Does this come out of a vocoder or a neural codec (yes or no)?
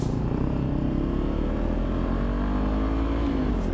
no